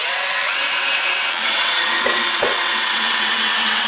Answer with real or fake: fake